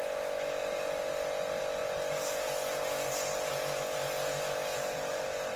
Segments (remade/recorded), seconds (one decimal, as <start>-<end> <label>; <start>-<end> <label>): 0.0-4.7 recorded; 4.7-5.6 remade